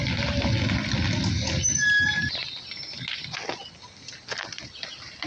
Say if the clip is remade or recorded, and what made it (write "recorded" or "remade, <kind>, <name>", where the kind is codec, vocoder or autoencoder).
recorded